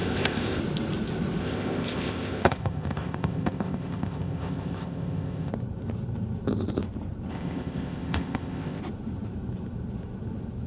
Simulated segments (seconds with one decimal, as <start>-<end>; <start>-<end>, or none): 0.0-0.6; 1.4-5.5; 7.3-8.8